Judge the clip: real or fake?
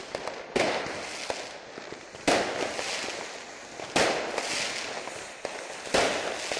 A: real